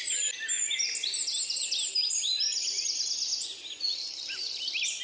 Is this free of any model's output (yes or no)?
yes